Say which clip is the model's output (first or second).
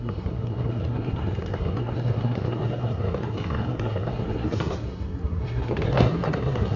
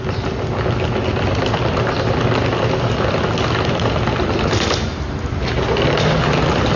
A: first